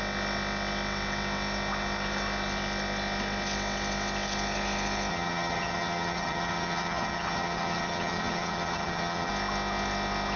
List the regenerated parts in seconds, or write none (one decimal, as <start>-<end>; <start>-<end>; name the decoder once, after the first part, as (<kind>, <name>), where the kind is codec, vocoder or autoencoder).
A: 5.1-9.3 (vocoder, HiFi-GAN)